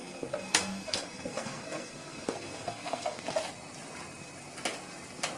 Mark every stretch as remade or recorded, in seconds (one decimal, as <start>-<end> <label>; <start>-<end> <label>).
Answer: 0.0-3.2 remade; 3.2-5.4 recorded

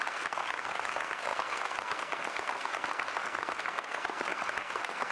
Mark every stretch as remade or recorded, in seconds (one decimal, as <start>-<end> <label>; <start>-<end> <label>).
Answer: 0.0-5.1 remade

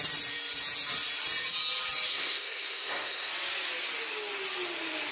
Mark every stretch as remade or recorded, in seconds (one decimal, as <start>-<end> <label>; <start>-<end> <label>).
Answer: 0.0-2.1 recorded; 2.1-3.3 remade; 3.3-5.1 recorded

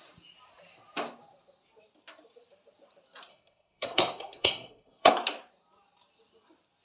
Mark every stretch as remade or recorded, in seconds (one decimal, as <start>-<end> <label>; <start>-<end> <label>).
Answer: 0.0-3.3 recorded; 3.3-5.1 remade; 5.1-6.8 recorded

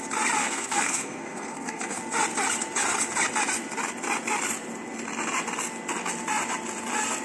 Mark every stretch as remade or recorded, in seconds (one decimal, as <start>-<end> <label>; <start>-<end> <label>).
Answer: 0.0-0.4 recorded; 0.4-2.0 remade; 2.0-7.2 recorded

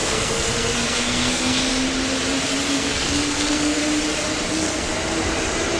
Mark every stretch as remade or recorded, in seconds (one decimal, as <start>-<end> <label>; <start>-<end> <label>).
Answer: 0.0-1.7 remade; 1.7-2.7 recorded; 2.7-3.8 remade; 3.8-4.5 recorded; 4.5-4.9 remade; 4.9-5.8 recorded

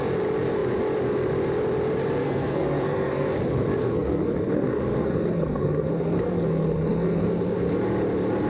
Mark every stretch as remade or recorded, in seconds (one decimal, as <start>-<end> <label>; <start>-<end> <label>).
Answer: 0.0-2.2 recorded; 2.2-3.3 remade; 3.3-3.8 recorded; 3.8-7.7 remade; 7.7-8.5 recorded

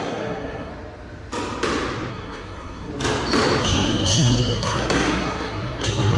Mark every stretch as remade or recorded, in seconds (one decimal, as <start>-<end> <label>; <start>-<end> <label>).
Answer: 0.0-0.7 remade; 0.7-2.1 recorded; 2.1-2.9 remade; 2.9-3.6 recorded; 3.6-6.2 remade